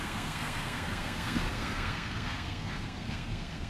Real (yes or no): no